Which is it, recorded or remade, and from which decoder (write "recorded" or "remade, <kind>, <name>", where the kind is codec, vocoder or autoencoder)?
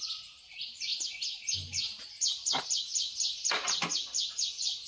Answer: recorded